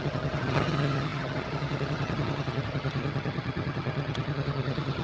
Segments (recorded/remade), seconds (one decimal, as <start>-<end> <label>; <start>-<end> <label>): 0.0-5.0 remade